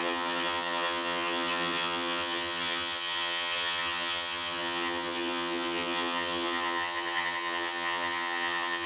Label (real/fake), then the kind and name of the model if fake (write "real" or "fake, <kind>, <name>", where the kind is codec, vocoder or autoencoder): fake, vocoder, HiFi-GAN